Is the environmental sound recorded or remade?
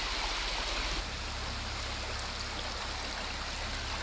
recorded